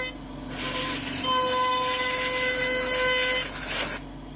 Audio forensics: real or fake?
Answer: real